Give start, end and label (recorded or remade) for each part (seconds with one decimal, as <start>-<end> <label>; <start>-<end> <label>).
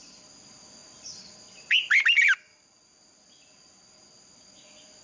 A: 0.0-5.0 recorded